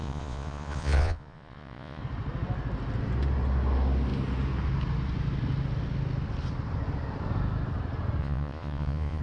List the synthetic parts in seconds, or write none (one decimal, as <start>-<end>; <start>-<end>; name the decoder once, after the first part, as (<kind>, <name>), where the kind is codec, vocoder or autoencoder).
0.0-2.0 (vocoder, Vocos); 8.2-9.2